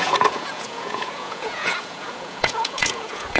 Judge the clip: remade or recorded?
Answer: remade